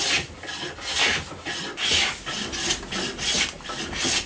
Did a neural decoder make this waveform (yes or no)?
no